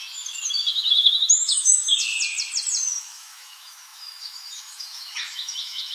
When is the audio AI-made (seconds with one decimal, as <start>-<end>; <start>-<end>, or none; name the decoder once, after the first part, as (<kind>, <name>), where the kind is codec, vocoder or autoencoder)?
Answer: 0.0-2.1 (autoencoder, DAC-VAE); 3.0-5.9